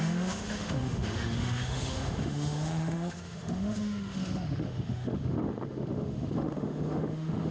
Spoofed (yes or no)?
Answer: yes